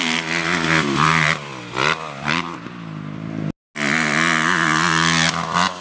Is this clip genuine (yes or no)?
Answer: yes